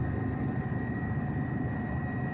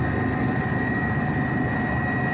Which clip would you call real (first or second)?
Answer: second